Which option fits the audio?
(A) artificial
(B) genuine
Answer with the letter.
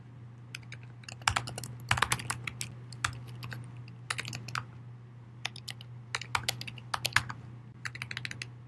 B